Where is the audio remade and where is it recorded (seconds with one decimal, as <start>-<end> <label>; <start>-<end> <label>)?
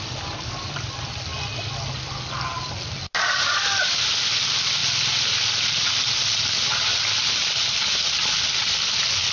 0.0-9.3 recorded